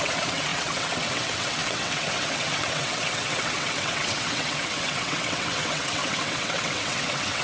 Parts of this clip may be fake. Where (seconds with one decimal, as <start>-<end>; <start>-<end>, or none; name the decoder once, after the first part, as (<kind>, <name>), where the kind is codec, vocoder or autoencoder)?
0.0-7.4 (vocoder, WaveNeXt)